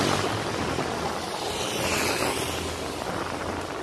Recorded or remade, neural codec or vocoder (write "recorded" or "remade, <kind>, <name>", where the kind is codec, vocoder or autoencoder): recorded